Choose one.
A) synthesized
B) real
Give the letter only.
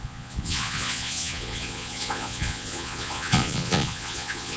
A